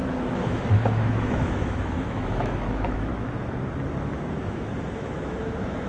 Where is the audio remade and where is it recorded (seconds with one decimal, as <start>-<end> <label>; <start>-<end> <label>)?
0.0-3.1 remade; 3.1-4.4 recorded; 4.4-5.9 remade